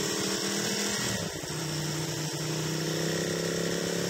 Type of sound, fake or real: real